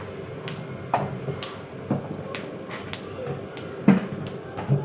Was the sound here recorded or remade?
recorded